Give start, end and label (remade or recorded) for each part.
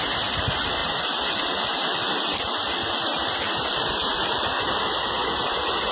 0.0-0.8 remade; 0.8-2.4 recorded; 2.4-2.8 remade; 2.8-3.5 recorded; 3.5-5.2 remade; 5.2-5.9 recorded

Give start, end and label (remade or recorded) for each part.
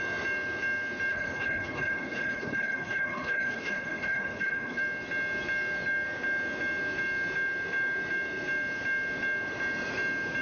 0.0-1.1 recorded; 1.1-4.8 remade; 4.8-10.4 recorded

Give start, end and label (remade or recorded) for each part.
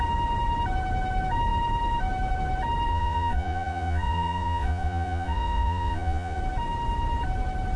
0.0-2.9 recorded; 2.9-6.4 remade; 6.4-7.8 recorded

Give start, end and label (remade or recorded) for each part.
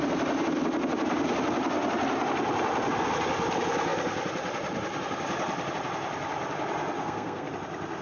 0.0-7.0 recorded; 7.0-7.5 remade; 7.5-8.0 recorded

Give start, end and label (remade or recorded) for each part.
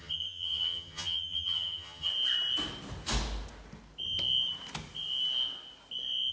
0.0-2.1 remade; 2.1-6.3 recorded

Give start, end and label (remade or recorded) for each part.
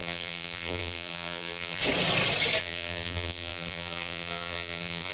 0.0-1.8 remade; 1.8-2.6 recorded; 2.6-5.1 remade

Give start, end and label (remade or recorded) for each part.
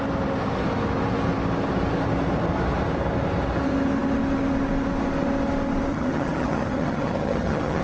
0.0-5.9 recorded; 5.9-7.8 remade